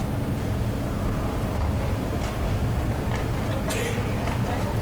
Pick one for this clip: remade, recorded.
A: recorded